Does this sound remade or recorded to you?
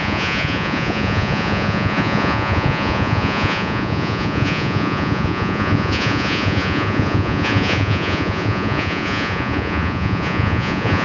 remade